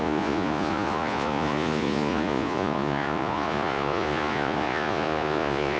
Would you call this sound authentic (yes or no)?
no